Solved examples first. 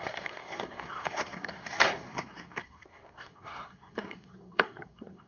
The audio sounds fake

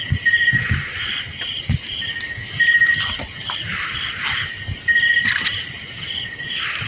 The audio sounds real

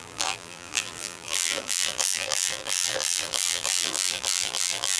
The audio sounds fake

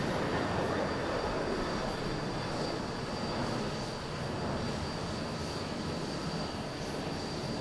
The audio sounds real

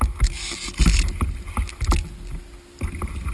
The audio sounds real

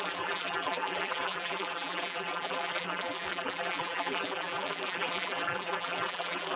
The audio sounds fake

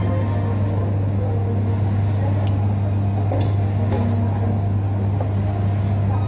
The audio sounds real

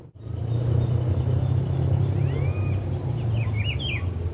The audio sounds real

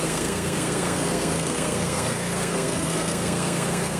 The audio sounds fake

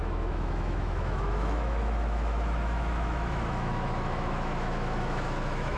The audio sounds fake